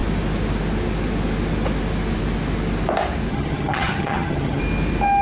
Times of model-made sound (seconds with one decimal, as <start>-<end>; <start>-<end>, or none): 3.3-4.6